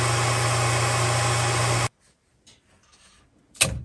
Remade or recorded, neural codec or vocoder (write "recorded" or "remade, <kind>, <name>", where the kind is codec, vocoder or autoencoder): recorded